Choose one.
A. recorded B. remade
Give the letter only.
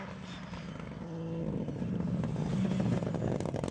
A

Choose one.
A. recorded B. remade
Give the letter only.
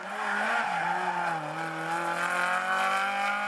A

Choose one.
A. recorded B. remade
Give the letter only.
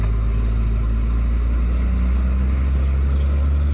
A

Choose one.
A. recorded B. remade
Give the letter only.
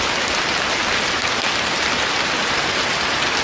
A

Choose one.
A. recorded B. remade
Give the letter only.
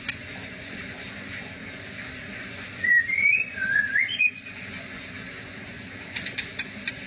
B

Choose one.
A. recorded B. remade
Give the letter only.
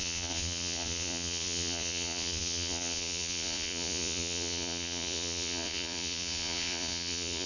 B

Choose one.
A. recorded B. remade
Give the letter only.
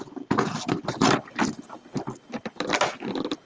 A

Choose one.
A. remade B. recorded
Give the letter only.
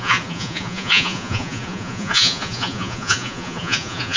A